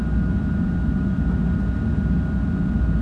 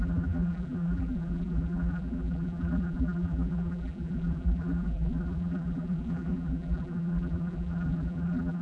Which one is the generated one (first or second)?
second